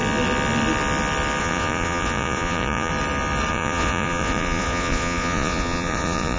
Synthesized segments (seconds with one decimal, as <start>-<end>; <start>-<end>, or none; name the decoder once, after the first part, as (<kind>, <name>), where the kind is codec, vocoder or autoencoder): 1.4-2.9 (vocoder, Vocos); 3.5-6.4